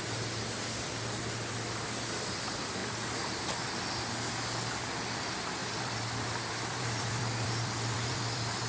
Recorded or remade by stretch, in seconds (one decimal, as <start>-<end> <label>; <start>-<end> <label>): 0.0-2.8 recorded; 2.8-3.4 remade; 3.4-5.6 recorded; 5.6-8.7 remade